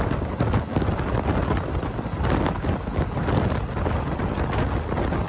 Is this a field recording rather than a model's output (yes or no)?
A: yes